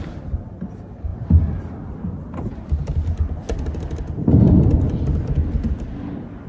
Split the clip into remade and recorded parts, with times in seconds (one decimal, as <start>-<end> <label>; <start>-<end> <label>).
0.0-6.5 recorded